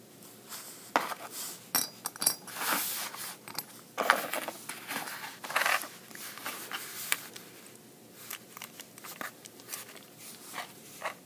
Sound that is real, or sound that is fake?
real